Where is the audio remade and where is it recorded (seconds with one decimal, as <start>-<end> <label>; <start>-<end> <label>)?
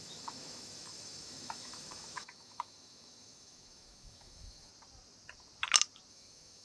0.0-4.7 remade; 4.7-6.1 recorded; 6.1-6.6 remade